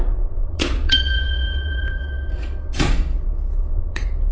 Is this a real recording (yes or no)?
no